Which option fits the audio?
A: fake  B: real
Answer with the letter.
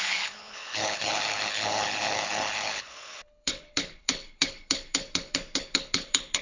A